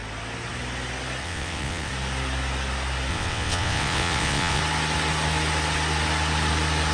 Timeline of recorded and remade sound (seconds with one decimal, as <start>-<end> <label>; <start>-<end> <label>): 0.0-1.2 recorded; 1.2-1.9 remade; 1.9-3.1 recorded; 3.1-4.6 remade; 4.6-6.9 recorded